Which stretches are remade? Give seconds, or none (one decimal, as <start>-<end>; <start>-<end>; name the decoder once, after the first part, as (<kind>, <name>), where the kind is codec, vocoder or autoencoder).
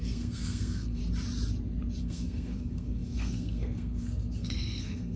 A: 0.0-1.0 (codec, SNAC); 2.0-5.2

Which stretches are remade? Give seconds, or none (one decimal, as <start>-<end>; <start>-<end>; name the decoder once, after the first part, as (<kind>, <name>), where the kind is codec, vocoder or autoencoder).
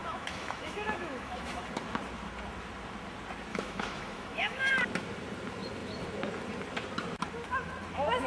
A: 0.0-1.6 (autoencoder, DAC-VAE); 3.5-4.7